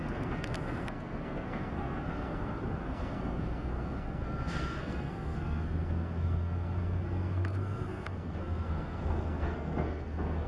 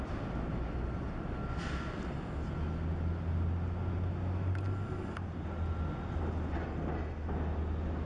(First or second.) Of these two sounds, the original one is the second